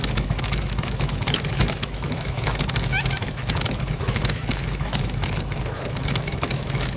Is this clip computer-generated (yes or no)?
yes